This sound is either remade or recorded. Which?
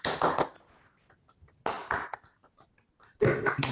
recorded